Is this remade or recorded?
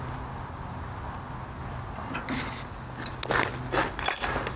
recorded